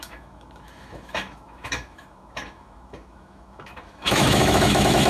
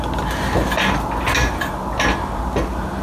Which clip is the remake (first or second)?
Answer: first